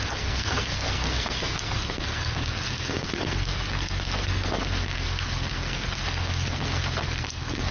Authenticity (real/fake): fake